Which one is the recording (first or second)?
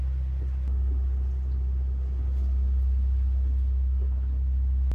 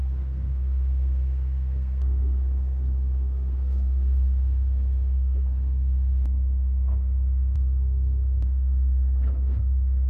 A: first